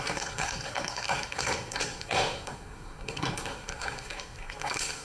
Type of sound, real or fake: fake